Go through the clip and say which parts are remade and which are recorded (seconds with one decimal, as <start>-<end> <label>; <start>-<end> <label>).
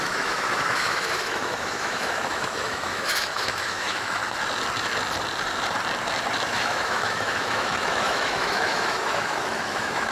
0.0-4.2 remade; 4.2-6.5 recorded; 6.5-10.1 remade